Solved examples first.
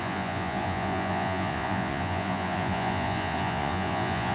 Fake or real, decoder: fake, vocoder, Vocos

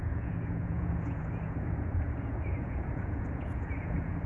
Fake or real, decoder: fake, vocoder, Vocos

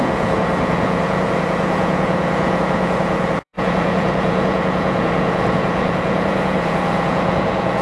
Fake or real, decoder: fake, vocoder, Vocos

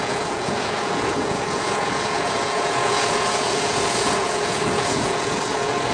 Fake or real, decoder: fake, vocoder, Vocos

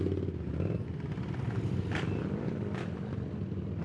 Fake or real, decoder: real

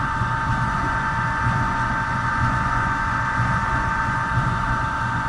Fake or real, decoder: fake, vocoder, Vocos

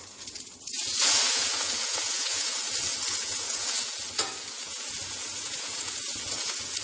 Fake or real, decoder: fake, vocoder, Vocos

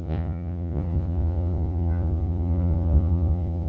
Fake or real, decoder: fake, vocoder, Vocos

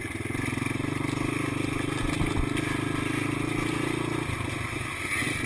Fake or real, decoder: real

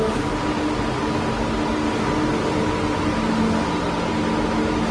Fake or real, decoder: real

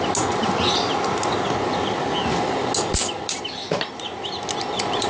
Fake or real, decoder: real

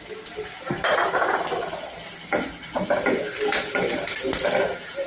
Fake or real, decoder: real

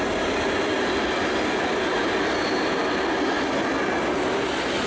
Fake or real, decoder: real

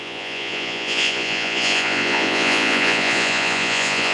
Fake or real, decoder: fake, vocoder, Vocos